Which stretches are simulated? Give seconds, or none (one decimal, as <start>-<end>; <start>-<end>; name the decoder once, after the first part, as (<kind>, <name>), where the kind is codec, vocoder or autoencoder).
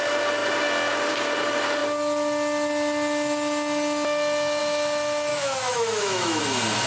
5.3-6.4 (autoencoder, DAC-VAE)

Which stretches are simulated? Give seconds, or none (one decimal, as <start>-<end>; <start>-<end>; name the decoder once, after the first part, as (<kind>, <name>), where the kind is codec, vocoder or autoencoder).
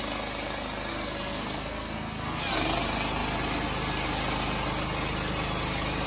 0.9-2.4 (codec, SNAC)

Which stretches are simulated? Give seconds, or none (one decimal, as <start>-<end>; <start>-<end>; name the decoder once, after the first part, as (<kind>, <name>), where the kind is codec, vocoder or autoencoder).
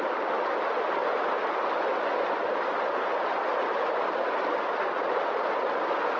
none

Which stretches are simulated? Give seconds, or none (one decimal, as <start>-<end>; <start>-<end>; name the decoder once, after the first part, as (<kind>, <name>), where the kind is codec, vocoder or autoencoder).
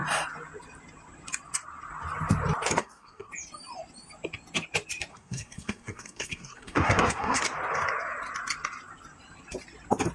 2.8-3.3 (codec, SNAC); 5.1-7.4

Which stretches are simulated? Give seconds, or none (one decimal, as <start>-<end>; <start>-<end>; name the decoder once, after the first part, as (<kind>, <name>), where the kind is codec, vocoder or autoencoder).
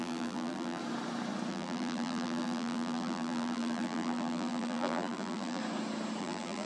0.0-0.8 (vocoder, BigVGAN v2); 1.5-5.6; 6.2-6.7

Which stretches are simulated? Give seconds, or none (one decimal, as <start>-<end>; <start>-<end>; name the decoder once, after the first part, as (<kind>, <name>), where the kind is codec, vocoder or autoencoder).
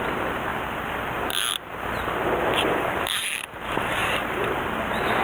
0.5-3.6 (vocoder, BigVGAN v2); 4.0-4.6